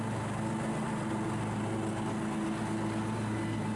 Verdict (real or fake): real